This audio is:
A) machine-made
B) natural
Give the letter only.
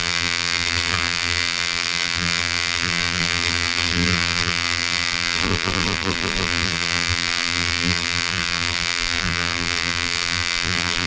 A